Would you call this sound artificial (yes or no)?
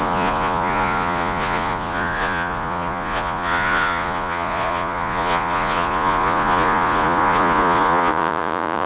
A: yes